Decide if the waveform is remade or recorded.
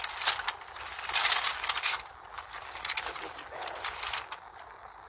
recorded